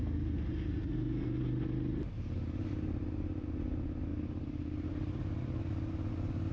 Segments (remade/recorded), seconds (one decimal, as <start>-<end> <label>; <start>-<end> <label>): 0.0-0.8 recorded; 0.8-1.4 remade; 1.4-6.5 recorded